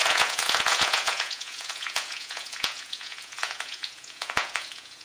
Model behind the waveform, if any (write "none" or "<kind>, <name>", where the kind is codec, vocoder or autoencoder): vocoder, Vocos